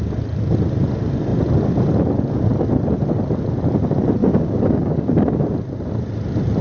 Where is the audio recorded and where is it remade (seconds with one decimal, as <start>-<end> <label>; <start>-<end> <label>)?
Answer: 0.0-4.2 recorded; 4.2-5.4 remade; 5.4-6.6 recorded